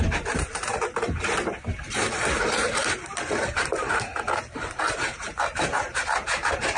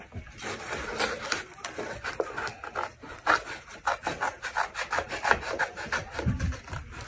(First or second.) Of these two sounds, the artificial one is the first